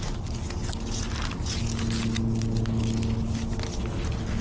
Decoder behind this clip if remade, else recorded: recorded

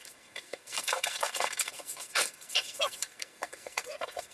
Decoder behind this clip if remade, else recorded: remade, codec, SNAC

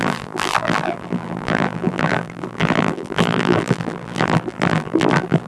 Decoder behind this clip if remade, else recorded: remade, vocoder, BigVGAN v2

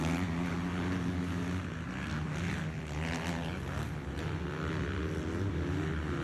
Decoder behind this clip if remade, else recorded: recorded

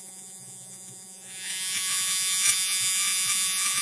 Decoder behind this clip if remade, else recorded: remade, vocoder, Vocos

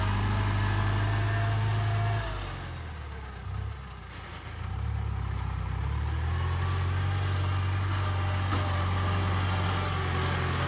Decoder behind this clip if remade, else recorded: recorded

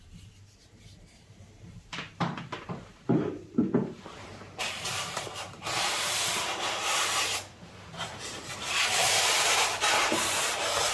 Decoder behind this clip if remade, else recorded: remade, vocoder, BigVGAN v2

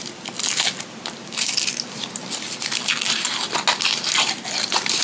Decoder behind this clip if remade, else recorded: recorded